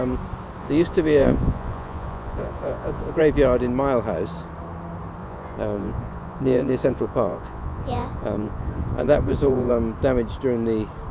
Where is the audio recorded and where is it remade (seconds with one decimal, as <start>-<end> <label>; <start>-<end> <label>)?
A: 0.0-0.6 recorded; 0.6-3.2 remade; 3.2-5.2 recorded; 5.2-9.7 remade; 9.7-11.1 recorded